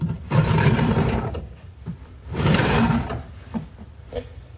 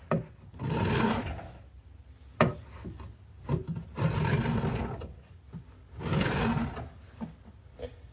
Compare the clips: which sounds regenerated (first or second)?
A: first